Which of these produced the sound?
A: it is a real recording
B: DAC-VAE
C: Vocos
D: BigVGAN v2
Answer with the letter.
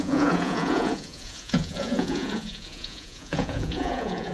C